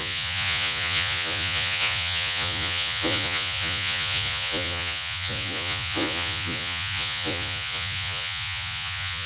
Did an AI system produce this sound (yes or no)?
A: yes